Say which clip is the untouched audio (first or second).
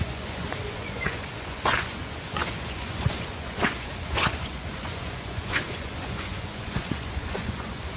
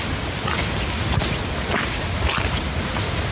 second